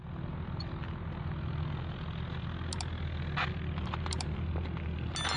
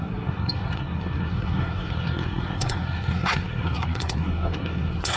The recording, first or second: first